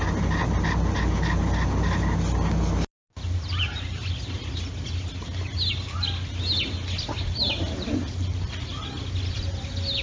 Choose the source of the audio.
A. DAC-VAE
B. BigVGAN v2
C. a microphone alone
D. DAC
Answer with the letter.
C